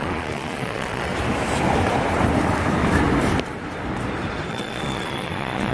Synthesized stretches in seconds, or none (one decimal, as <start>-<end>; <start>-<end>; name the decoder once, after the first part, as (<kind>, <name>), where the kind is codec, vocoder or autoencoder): 0.0-1.1 (vocoder, Vocos); 4.5-5.7